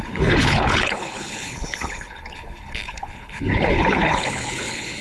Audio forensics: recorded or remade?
remade